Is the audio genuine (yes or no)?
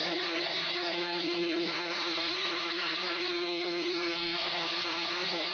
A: no